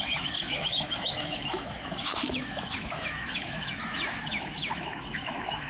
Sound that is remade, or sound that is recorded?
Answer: remade